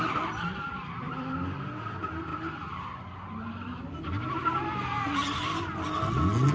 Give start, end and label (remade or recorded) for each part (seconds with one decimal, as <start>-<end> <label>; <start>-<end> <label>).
0.0-6.5 recorded